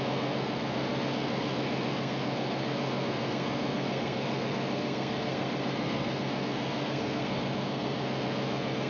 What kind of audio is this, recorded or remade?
remade